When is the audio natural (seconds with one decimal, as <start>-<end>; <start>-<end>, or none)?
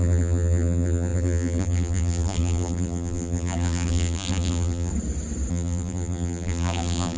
4.9-5.5